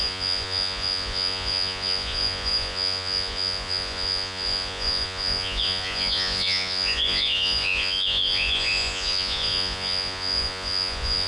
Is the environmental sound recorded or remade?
remade